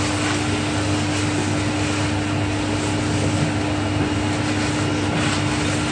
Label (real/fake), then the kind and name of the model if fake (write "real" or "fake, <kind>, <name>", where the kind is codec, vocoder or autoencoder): real